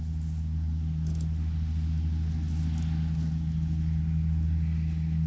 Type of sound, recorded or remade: recorded